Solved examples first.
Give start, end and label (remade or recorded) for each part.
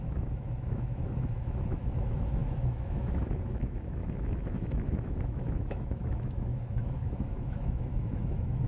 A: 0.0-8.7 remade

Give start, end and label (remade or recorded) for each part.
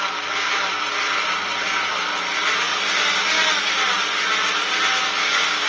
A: 0.0-5.2 recorded; 5.2-5.7 remade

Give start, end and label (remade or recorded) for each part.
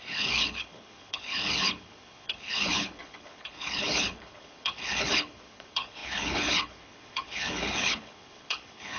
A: 0.0-9.0 remade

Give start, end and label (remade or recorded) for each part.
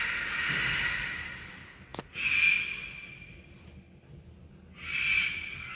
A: 0.0-5.7 recorded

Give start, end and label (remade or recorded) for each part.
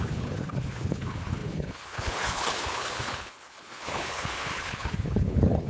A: 0.0-5.7 remade